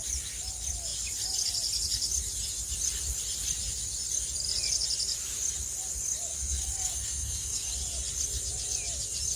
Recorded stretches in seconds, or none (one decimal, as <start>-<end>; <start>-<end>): 0.0-6.3; 7.7-9.4

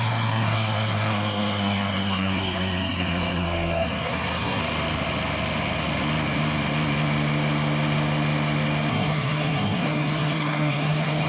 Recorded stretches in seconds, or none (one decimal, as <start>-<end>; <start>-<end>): 4.6-8.9

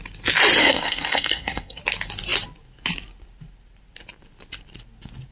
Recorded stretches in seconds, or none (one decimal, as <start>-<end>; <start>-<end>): 0.0-0.6; 1.8-5.3

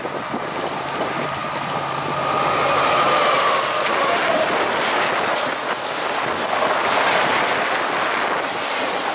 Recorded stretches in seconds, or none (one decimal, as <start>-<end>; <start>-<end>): 0.0-9.1

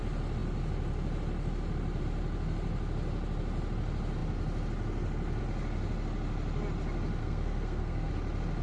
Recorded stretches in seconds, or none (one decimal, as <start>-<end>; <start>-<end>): 0.0-7.2; 8.1-8.6

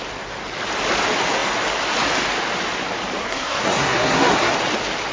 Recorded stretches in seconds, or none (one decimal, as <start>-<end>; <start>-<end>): 0.0-3.2; 4.5-5.1

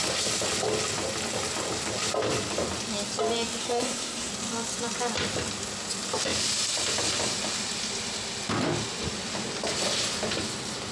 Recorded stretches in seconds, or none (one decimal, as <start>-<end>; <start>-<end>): 0.0-3.6; 4.3-10.9